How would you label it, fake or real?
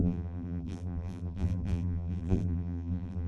fake